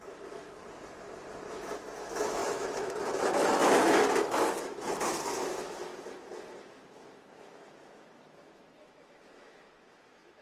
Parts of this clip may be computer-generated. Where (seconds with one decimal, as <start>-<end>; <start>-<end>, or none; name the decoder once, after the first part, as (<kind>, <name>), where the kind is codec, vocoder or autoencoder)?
0.0-0.6 (autoencoder, DAC-VAE); 1.5-5.9; 6.6-10.4